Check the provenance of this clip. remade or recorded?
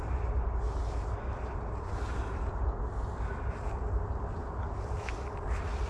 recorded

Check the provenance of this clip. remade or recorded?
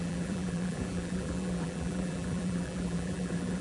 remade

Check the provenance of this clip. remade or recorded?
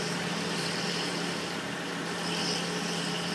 remade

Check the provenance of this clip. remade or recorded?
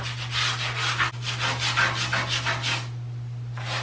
recorded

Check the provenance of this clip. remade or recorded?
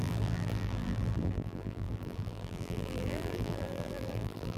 remade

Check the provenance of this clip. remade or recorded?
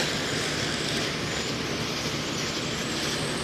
recorded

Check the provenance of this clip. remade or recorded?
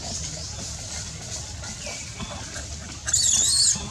recorded